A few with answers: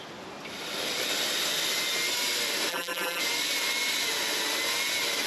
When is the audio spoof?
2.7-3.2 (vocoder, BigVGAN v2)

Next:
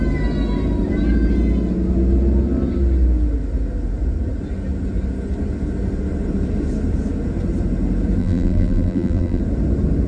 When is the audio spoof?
8.2-9.4 (vocoder, BigVGAN v2)